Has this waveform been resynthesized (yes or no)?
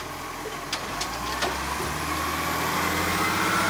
no